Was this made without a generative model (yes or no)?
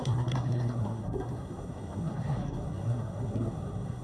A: no